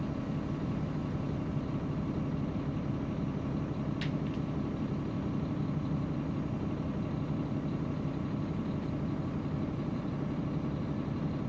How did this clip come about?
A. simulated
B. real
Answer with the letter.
B